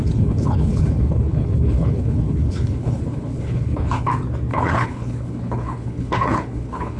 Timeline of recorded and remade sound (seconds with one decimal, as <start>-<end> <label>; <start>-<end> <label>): 0.0-4.1 remade; 4.1-4.5 recorded; 4.5-7.0 remade